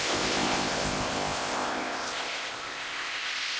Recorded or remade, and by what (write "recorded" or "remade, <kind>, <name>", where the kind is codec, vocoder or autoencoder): remade, codec, ZipCodec